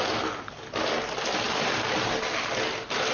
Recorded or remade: recorded